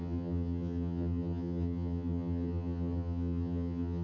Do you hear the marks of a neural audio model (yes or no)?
yes